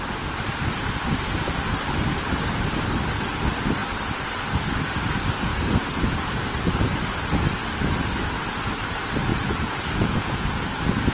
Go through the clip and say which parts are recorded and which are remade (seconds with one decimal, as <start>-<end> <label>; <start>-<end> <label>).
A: 0.0-9.3 recorded; 9.3-10.7 remade; 10.7-11.1 recorded